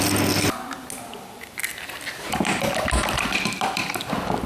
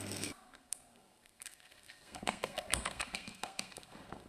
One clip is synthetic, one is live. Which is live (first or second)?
first